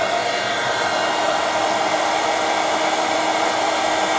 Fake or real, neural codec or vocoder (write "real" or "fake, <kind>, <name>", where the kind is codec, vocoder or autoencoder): real